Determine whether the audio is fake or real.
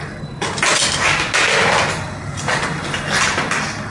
real